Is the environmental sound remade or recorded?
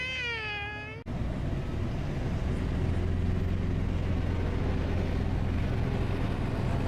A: recorded